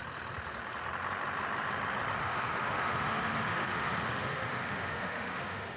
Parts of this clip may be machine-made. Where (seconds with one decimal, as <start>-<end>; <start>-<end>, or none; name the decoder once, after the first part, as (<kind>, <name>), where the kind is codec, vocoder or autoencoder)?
2.2-5.8 (autoencoder, DAC-VAE)